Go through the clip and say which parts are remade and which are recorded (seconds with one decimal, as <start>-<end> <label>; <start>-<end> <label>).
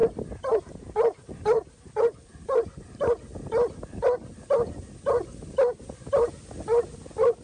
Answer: 0.0-7.4 recorded